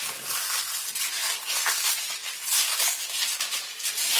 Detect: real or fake real